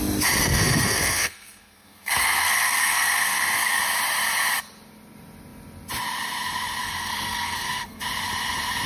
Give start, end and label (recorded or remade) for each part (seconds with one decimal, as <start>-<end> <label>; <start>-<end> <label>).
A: 0.0-0.4 recorded; 0.4-3.8 remade; 3.8-6.8 recorded; 6.8-8.0 remade; 8.0-8.9 recorded